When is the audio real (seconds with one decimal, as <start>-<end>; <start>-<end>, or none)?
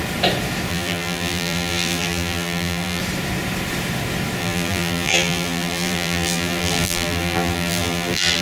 0.0-0.7; 3.0-4.4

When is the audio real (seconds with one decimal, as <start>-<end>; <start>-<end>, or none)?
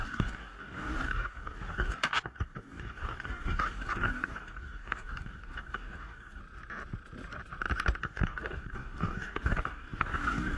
6.4-8.0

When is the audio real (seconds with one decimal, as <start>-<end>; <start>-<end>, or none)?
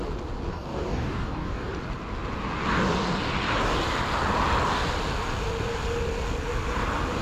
0.0-0.5; 1.7-7.2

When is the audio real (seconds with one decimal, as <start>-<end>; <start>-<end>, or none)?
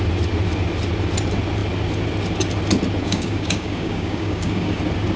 0.0-3.0; 4.8-5.2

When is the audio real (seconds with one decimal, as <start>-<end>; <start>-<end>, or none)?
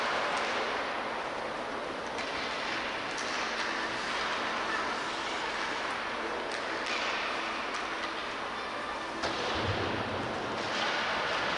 0.0-11.6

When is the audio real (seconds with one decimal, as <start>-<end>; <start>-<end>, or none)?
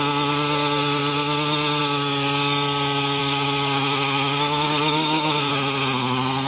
0.0-3.2; 5.5-6.5